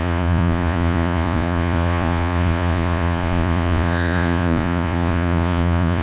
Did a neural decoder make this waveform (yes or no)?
yes